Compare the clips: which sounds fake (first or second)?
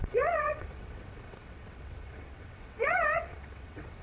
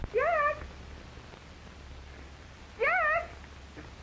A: first